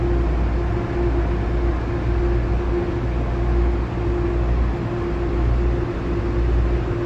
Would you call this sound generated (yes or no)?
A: no